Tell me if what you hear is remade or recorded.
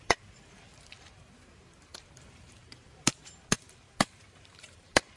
remade